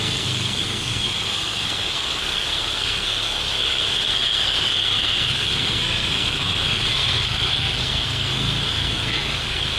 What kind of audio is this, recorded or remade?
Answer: remade